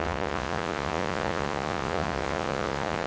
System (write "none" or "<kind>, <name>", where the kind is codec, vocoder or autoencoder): vocoder, Vocos